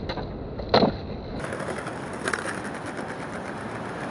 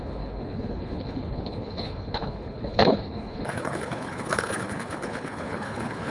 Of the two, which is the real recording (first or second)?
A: first